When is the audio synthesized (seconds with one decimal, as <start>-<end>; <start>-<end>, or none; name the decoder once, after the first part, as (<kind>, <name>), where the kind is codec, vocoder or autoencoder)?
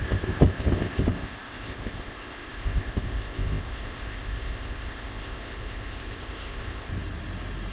0.0-6.9 (codec, ZipCodec)